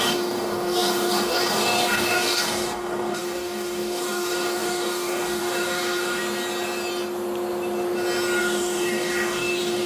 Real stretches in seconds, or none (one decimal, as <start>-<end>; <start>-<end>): 6.2-8.4